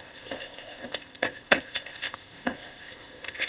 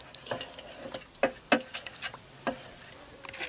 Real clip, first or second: second